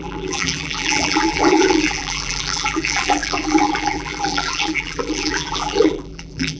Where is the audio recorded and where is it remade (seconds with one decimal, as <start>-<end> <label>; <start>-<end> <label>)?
0.0-6.6 remade